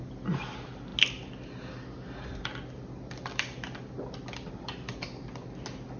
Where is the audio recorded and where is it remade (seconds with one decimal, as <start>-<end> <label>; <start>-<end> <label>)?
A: 0.0-6.0 recorded